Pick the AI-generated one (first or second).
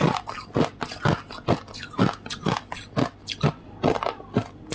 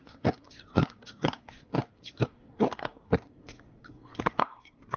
second